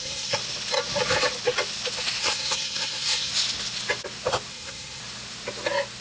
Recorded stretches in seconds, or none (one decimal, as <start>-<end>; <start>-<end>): 0.4-2.2; 3.3-4.5; 5.0-6.0